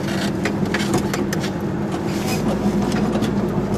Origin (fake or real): real